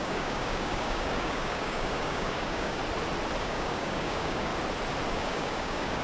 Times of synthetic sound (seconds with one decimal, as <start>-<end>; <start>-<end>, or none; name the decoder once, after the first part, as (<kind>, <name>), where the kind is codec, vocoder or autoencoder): 0.0-2.8 (codec, DAC); 3.4-4.5; 5.1-6.0